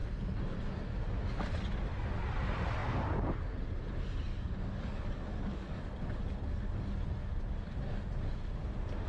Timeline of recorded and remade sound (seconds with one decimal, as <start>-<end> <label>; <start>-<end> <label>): 0.0-4.3 recorded; 4.3-5.8 remade; 5.8-9.1 recorded